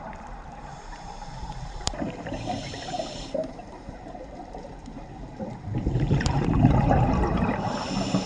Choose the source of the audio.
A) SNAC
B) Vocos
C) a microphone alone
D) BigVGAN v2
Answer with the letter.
D